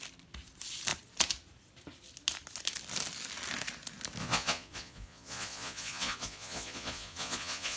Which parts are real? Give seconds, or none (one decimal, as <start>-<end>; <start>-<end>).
0.0-4.2